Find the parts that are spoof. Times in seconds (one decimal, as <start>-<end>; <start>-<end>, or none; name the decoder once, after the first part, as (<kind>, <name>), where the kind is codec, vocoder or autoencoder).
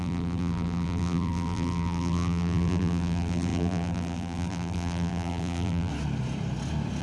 0.0-5.9 (vocoder, BigVGAN v2)